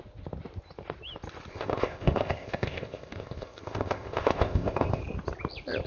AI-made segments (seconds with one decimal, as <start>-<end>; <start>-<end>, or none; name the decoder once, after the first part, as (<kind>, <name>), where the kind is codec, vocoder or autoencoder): 1.5-5.0 (codec, ZipCodec)